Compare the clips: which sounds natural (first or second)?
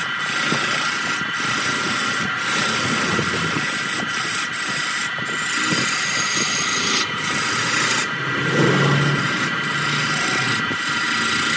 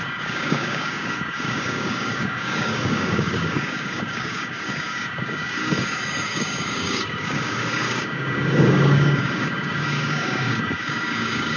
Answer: first